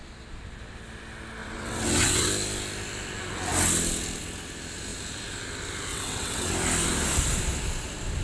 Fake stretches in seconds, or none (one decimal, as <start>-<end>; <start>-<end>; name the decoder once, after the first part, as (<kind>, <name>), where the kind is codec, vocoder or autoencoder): 1.4-2.3 (vocoder, WaveNeXt); 5.9-6.5